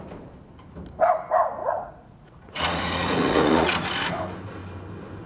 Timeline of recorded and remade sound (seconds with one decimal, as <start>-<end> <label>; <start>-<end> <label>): 0.0-1.6 recorded; 1.6-3.9 remade; 3.9-5.3 recorded